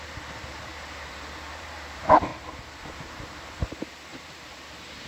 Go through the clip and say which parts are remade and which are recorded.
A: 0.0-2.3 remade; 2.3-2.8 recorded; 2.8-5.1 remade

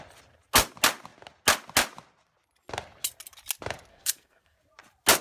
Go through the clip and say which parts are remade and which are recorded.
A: 0.0-3.9 recorded; 3.9-4.6 remade; 4.6-5.2 recorded

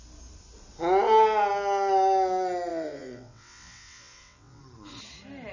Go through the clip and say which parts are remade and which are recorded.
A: 0.0-2.7 recorded; 2.7-4.6 remade; 4.6-5.5 recorded

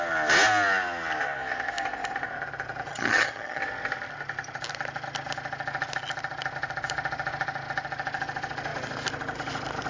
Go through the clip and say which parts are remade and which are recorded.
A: 0.0-2.9 recorded; 2.9-3.6 remade; 3.6-9.9 recorded

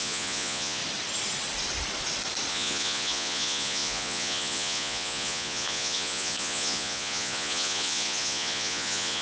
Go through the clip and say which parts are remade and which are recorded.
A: 0.0-0.8 remade; 0.8-2.5 recorded; 2.5-9.2 remade